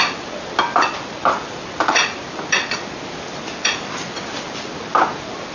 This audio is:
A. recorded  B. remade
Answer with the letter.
A